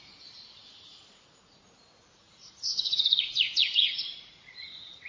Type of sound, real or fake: fake